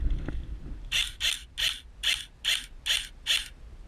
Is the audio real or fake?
real